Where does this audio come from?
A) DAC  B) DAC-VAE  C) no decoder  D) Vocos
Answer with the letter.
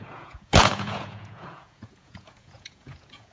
D